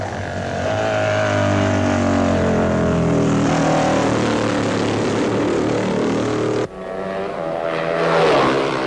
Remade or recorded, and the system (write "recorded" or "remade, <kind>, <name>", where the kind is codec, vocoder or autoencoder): recorded